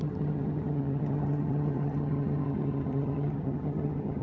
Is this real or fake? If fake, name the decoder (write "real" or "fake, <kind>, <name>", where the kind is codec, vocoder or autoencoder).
fake, vocoder, HiFi-GAN